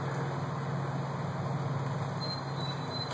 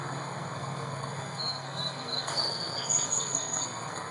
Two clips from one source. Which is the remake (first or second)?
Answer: second